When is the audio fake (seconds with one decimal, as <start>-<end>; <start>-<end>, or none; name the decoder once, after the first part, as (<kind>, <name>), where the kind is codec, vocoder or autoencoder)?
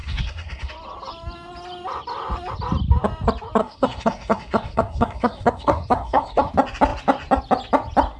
0.0-0.7 (codec, SNAC); 3.6-6.5